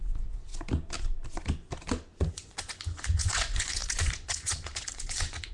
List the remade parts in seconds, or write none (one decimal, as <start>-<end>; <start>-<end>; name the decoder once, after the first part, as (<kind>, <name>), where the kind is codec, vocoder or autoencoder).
0.0-0.5 (vocoder, Vocos); 2.3-5.5